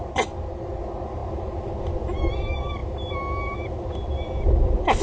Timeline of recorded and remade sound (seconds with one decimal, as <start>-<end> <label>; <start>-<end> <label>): 0.0-5.0 recorded